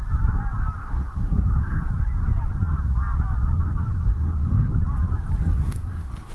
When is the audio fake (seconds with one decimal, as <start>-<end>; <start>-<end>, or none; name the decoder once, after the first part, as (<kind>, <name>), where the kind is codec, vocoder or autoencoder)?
0.8-1.9 (codec, SNAC); 4.1-4.7; 5.5-6.3